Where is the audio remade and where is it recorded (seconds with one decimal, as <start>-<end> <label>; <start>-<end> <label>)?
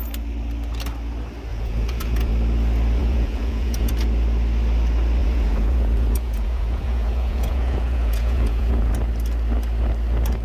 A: 0.0-1.5 recorded; 1.5-2.3 remade; 2.3-3.0 recorded; 3.0-3.9 remade; 3.9-5.2 recorded; 5.2-8.9 remade; 8.9-10.4 recorded